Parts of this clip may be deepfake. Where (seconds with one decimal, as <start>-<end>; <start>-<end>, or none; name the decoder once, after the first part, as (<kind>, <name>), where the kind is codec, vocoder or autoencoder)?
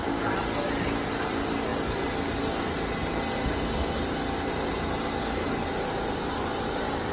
none